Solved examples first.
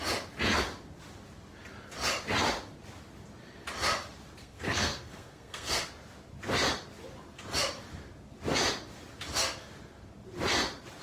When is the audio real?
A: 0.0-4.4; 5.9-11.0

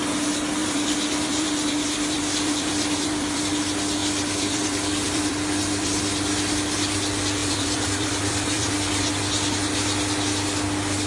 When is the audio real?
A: 0.0-0.6; 3.4-4.0; 6.0-7.4; 8.7-11.1

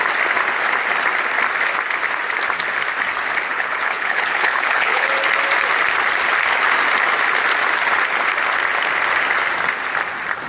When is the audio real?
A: 0.0-3.5; 5.1-10.5

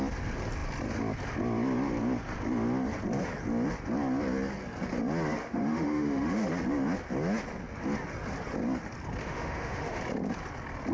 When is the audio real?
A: 0.0-5.4; 6.5-9.2; 10.0-10.9

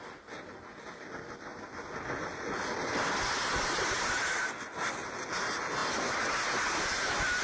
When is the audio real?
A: 0.0-7.4